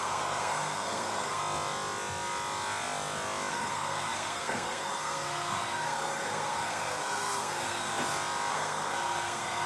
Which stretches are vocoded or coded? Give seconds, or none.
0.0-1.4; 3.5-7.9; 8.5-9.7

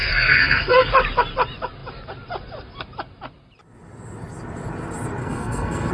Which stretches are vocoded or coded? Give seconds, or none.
0.0-0.9; 5.2-5.9

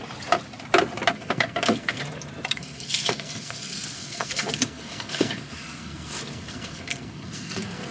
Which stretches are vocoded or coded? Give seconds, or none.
1.1-2.0; 2.5-7.9

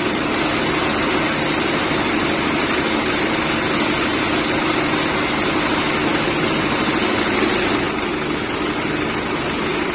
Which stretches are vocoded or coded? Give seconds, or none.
none

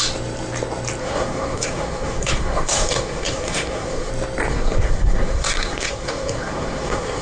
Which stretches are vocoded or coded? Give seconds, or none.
1.0-4.1; 4.5-7.2